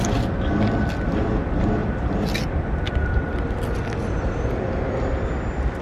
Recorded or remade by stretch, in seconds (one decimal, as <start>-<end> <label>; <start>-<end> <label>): 0.0-5.8 recorded